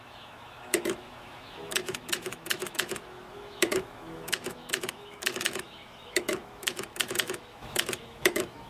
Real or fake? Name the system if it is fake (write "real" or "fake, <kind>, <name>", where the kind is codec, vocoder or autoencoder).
fake, autoencoder, DAC-VAE